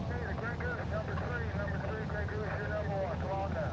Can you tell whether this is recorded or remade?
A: recorded